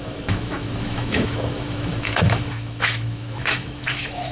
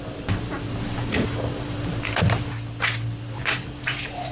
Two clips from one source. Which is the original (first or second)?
second